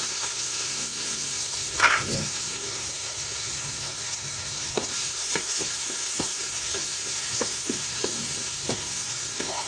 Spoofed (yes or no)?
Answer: yes